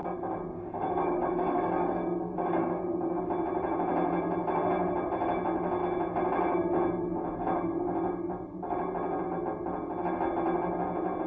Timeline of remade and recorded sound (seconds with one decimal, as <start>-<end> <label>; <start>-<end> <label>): 0.0-3.2 remade; 3.2-11.3 recorded